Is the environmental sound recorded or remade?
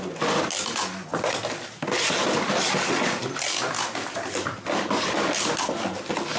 recorded